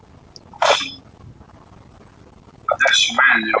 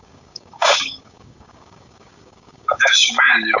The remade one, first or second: second